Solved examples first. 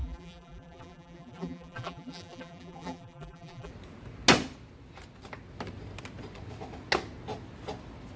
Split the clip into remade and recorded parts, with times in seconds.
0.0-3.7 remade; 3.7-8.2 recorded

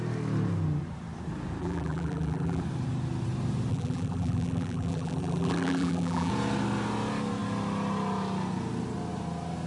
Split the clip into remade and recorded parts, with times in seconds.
0.0-1.6 recorded; 1.6-2.6 remade; 2.6-3.7 recorded; 3.7-6.3 remade; 6.3-9.7 recorded

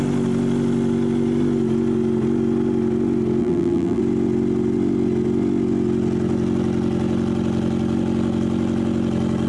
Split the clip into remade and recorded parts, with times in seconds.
0.0-3.4 recorded; 3.4-4.0 remade; 4.0-9.5 recorded

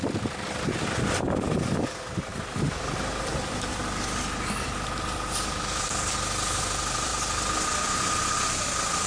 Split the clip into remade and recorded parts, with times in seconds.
0.0-7.1 remade; 7.1-8.5 recorded; 8.5-9.1 remade

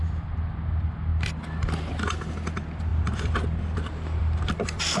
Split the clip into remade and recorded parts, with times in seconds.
0.0-1.1 remade; 1.1-2.3 recorded; 2.3-5.0 remade

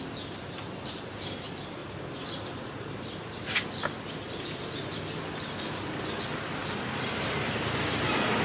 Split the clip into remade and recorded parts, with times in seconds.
0.0-1.8 recorded; 1.8-4.9 remade; 4.9-6.6 recorded; 6.6-7.6 remade; 7.6-8.4 recorded

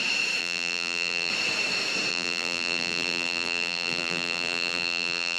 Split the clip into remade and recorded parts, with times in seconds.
0.0-0.4 recorded; 0.4-1.3 remade; 1.3-2.1 recorded; 2.1-5.4 remade